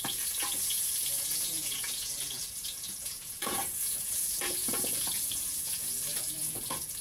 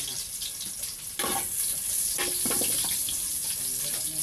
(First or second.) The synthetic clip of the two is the first